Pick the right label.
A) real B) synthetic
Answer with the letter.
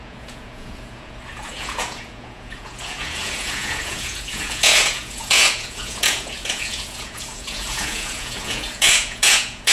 B